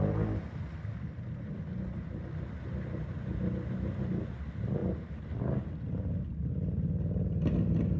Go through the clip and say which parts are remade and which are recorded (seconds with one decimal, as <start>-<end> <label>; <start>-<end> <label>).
0.0-8.0 recorded